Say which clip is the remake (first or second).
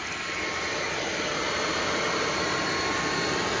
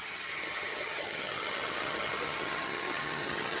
second